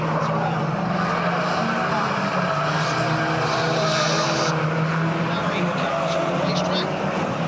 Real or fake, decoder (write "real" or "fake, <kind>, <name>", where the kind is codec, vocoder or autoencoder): real